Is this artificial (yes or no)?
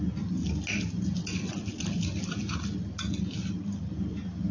no